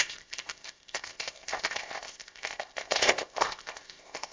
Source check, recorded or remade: remade